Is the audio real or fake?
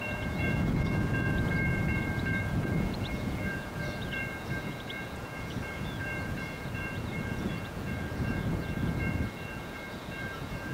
fake